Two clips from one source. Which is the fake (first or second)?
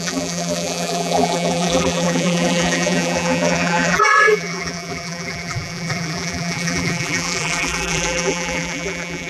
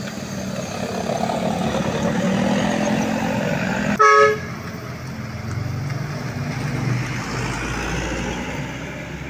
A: first